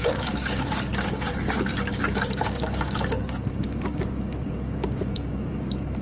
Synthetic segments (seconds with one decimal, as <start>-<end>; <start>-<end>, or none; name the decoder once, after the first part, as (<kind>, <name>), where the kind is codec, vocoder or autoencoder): 0.0-6.0 (codec, DAC)